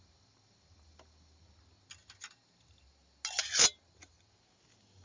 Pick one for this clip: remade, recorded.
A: recorded